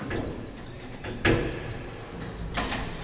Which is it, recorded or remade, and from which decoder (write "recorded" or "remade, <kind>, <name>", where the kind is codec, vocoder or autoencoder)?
recorded